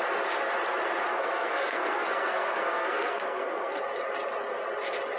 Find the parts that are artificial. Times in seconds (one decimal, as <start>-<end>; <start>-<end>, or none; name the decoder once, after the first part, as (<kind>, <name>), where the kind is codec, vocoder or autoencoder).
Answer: 1.1-3.8 (codec, SNAC)